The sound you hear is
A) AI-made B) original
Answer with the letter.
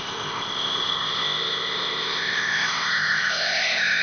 A